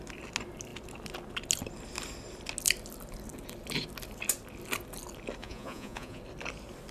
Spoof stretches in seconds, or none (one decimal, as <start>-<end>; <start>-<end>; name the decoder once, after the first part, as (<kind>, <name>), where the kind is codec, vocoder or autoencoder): 5.4-6.2 (vocoder, Vocos)